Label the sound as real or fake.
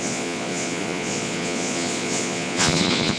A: fake